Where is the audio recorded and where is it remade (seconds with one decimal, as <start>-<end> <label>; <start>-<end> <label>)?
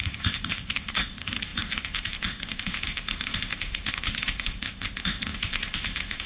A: 0.0-6.3 remade